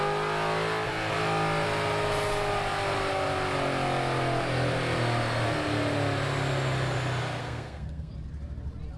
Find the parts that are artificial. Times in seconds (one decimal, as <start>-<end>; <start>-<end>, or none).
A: 7.4-8.1